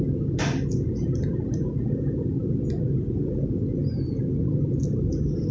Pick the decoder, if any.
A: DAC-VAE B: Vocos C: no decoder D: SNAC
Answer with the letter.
C